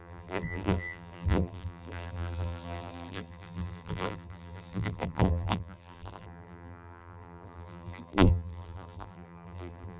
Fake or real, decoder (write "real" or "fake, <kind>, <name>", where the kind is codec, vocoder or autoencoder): fake, vocoder, BigVGAN v2